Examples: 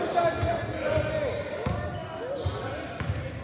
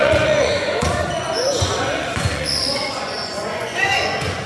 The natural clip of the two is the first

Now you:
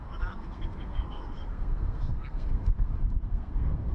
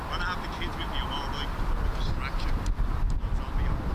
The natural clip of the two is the second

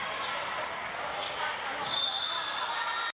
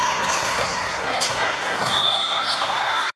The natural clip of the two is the first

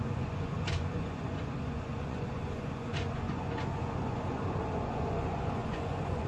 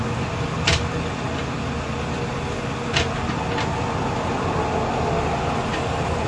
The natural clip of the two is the second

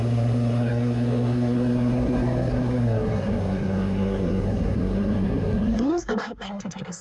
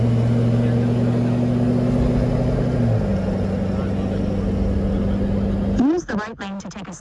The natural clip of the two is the second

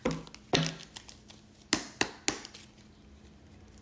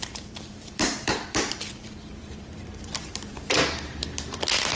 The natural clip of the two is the first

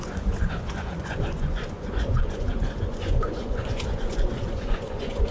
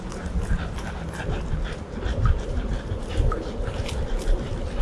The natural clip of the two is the second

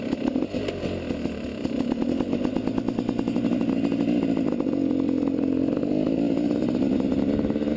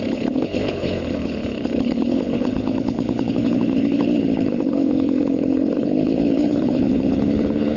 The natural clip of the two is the first